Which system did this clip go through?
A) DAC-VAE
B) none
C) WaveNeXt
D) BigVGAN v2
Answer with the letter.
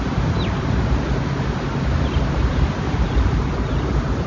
B